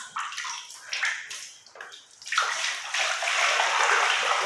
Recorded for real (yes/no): yes